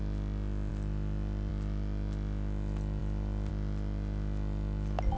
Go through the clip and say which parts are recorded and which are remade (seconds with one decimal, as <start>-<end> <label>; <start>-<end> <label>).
0.0-0.7 recorded; 0.7-1.5 remade; 1.5-3.0 recorded; 3.0-3.5 remade; 3.5-5.2 recorded